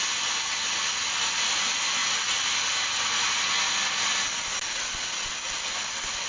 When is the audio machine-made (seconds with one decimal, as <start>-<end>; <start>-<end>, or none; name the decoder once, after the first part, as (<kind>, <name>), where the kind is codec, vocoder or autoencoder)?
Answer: none